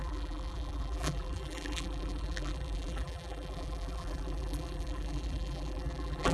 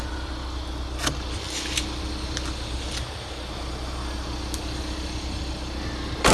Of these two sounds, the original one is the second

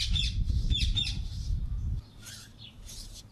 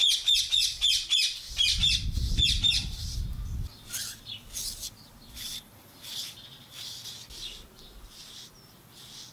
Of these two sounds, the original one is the second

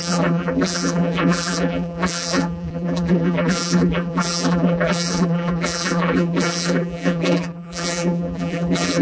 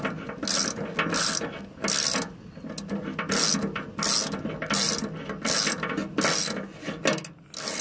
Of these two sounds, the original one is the second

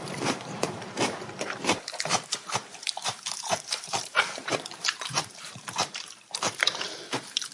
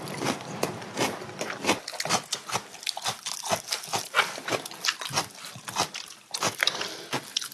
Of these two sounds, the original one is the second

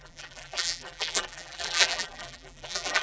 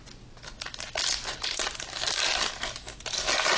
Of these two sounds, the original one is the second